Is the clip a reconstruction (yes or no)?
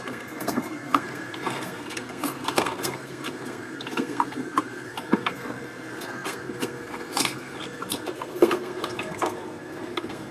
yes